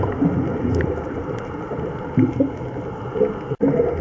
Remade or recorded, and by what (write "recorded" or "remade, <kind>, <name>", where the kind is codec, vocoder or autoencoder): remade, vocoder, BigVGAN v2